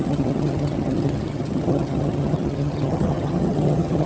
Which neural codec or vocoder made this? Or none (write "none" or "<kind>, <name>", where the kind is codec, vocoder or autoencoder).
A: vocoder, HiFi-GAN